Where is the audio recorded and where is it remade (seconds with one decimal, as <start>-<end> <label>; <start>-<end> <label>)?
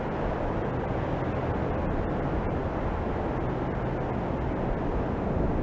0.0-5.6 recorded